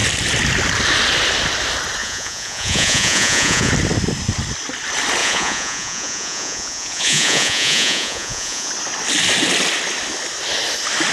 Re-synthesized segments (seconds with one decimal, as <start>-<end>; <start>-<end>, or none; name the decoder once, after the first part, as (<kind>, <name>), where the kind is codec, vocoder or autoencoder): 2.0-3.7 (vocoder, Vocos); 5.2-8.7